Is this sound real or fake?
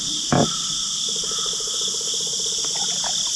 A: real